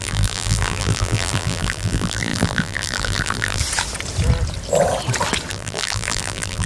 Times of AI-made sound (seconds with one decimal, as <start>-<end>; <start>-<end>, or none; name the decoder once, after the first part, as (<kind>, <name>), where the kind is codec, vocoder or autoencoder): 0.0-3.6 (vocoder, BigVGAN v2); 5.5-6.7